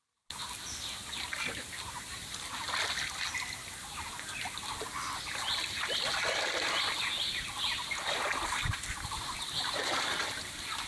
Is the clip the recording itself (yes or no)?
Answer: yes